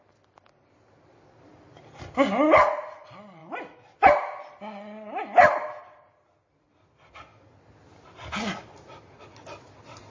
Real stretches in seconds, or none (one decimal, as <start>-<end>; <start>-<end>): 0.0-10.1